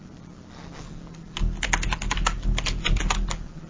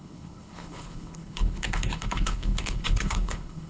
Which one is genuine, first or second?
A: first